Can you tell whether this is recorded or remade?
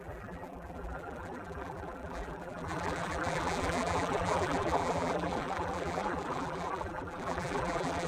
remade